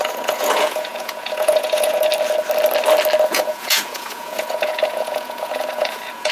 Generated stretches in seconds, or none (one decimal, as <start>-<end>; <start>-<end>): 0.0-2.1; 3.3-6.3